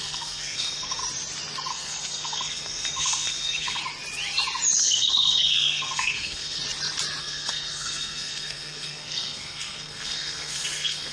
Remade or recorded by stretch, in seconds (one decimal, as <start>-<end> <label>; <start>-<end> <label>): 0.0-1.0 remade; 1.0-1.7 recorded; 1.7-3.8 remade; 3.8-4.8 recorded; 4.8-6.6 remade; 6.6-7.2 recorded; 7.2-11.1 remade